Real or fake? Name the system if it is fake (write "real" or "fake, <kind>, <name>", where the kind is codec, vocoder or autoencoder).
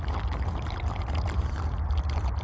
real